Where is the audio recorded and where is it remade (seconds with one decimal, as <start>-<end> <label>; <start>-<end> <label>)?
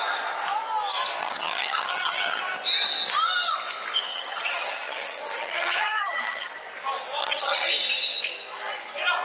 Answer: 0.0-1.2 recorded; 1.2-2.4 remade; 2.4-4.1 recorded; 4.1-6.5 remade; 6.5-7.2 recorded; 7.2-7.7 remade; 7.7-9.2 recorded